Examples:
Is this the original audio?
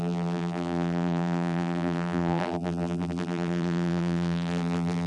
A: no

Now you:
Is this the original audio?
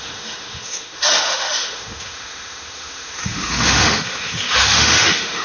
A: no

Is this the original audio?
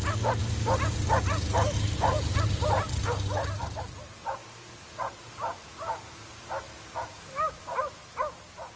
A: yes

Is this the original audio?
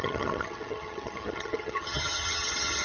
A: no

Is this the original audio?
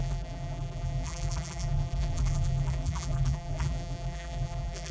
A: no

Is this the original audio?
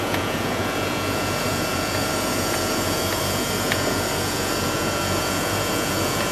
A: no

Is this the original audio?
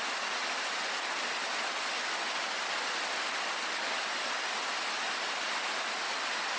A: yes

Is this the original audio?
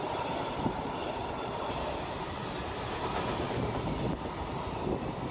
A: yes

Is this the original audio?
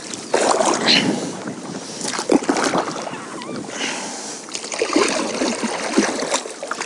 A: yes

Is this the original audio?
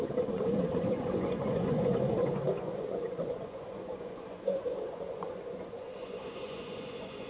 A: no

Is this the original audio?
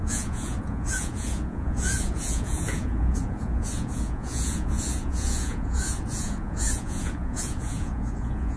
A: no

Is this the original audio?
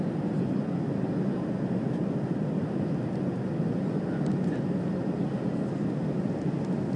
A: yes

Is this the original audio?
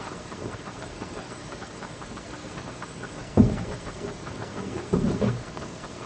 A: no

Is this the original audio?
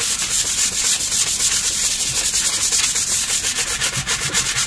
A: yes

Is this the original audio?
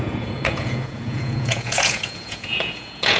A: no